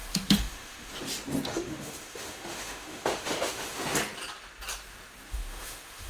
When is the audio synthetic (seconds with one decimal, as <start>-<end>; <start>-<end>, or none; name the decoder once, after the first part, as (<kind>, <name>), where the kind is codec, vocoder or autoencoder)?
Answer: 0.0-0.9 (autoencoder, DAC-VAE); 1.5-3.8; 5.3-6.1